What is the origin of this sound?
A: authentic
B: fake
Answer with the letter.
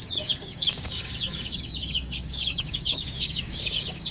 B